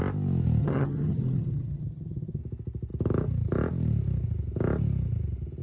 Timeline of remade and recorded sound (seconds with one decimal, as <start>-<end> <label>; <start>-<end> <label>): 0.0-0.6 recorded; 0.6-2.4 remade; 2.4-5.6 recorded